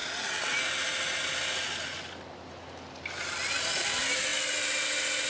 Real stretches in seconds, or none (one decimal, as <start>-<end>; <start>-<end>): 0.0-4.3